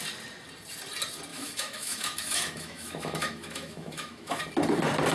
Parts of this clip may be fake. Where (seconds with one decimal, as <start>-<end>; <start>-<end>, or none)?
1.3-4.4